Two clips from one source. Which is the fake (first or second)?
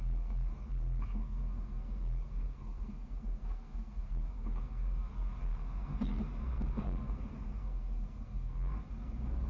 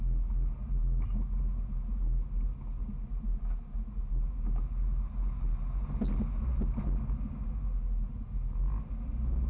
first